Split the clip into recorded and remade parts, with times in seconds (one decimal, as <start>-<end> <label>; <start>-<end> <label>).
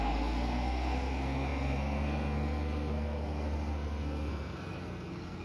0.0-5.4 remade